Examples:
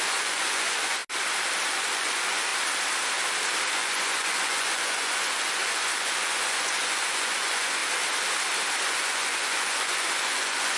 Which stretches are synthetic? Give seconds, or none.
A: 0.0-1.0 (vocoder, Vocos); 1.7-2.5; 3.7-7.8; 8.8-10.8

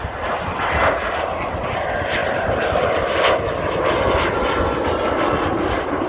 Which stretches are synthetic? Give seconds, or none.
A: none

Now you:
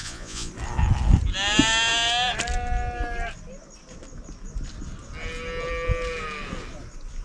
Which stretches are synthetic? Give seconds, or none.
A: 0.0-0.5 (vocoder, Vocos)

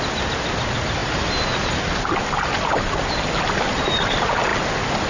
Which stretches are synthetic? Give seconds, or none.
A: none

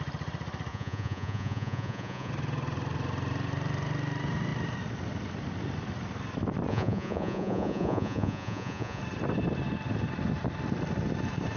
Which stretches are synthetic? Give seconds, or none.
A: 0.7-2.3 (vocoder, Vocos); 6.7-9.0

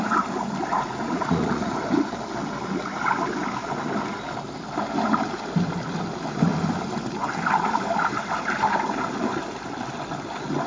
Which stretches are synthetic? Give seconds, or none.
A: 0.7-1.8 (vocoder, Vocos)

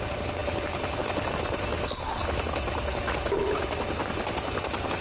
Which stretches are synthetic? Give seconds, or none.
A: none